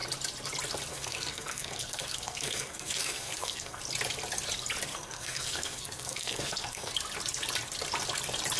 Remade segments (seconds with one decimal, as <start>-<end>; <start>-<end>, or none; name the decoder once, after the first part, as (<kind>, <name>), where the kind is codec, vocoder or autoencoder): 0.9-3.8 (codec, SNAC); 4.9-6.9